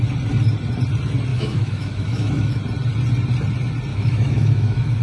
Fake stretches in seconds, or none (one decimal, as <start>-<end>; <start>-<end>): 1.3-2.6; 3.9-5.0